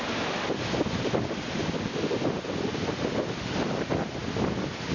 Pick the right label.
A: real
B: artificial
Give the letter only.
A